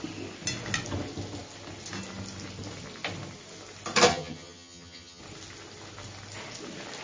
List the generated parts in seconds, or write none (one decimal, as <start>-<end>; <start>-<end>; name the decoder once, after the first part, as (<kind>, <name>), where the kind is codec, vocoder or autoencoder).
4.1-5.2 (vocoder, HiFi-GAN)